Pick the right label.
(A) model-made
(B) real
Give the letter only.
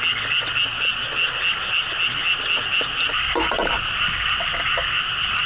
B